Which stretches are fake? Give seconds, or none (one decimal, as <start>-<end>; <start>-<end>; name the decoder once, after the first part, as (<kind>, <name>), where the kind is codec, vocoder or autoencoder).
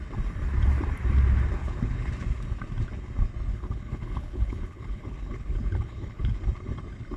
1.6-2.1 (codec, HILCodec); 3.5-6.4